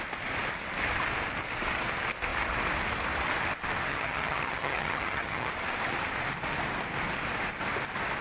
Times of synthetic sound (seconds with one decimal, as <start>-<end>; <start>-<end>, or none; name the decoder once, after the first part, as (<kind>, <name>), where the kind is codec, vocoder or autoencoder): 3.9-5.5 (vocoder, HiFi-GAN)